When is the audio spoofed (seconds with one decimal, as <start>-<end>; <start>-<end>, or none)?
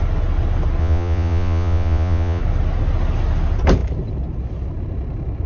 0.8-2.4